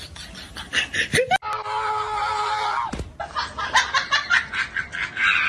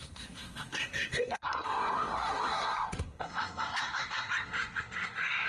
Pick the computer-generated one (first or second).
second